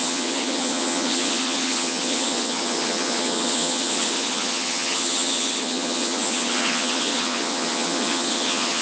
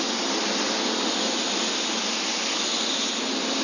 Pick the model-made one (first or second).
first